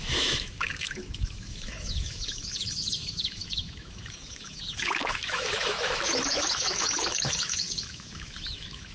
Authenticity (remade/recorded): remade